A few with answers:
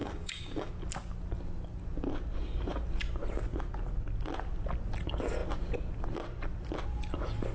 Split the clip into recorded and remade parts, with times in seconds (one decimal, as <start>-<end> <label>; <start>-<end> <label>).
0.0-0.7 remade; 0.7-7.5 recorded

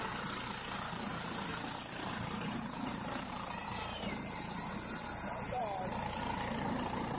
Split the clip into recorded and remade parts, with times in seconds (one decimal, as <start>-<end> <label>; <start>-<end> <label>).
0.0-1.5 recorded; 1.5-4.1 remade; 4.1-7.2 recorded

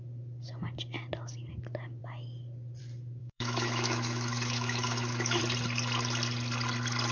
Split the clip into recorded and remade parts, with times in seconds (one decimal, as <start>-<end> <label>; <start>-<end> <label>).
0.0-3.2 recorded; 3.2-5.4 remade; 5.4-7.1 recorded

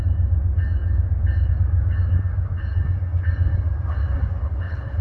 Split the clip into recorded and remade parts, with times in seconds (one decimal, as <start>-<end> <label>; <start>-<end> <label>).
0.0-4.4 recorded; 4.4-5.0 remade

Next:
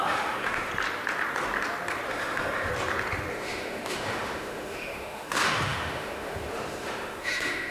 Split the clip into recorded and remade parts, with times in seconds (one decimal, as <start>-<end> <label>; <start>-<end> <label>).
0.0-0.7 remade; 0.7-2.1 recorded; 2.1-2.7 remade; 2.7-3.3 recorded; 3.3-7.7 remade

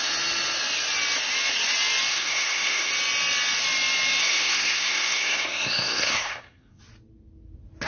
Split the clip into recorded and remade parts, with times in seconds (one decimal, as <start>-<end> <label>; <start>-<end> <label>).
0.0-2.1 recorded; 2.1-2.9 remade; 2.9-4.2 recorded; 4.2-6.8 remade; 6.8-7.9 recorded